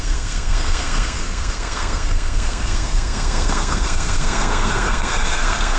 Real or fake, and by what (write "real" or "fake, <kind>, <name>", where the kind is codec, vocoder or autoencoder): fake, codec, SNAC